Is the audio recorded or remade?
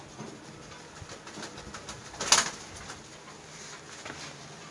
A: recorded